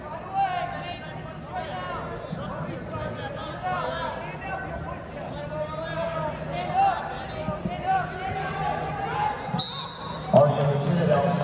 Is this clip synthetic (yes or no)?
no